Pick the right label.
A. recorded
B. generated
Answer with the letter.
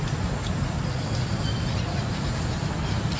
A